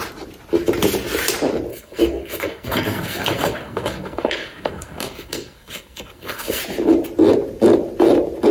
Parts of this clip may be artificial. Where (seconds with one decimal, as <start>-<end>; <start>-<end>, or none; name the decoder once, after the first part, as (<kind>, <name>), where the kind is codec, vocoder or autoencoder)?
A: 1.7-6.6 (codec, SNAC)